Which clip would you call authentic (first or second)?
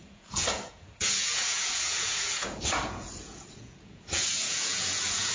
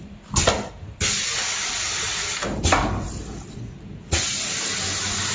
second